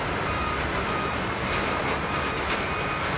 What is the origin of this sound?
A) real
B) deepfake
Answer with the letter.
A